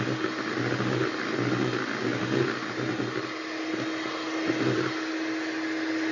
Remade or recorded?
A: recorded